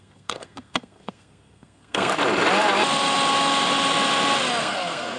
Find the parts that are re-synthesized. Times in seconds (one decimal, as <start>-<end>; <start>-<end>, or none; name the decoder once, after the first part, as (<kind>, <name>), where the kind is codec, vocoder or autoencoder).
0.0-2.1 (codec, SNAC); 4.6-5.2